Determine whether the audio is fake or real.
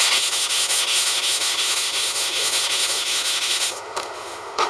fake